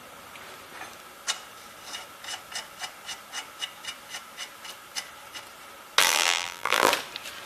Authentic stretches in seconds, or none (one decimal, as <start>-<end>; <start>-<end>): 0.0-6.0; 6.9-7.5